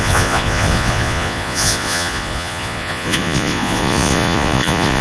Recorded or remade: remade